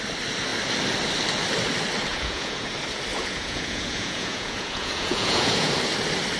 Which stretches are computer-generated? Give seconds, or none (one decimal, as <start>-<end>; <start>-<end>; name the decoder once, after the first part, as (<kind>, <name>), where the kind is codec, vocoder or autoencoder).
2.1-2.7 (vocoder, Vocos); 3.1-5.7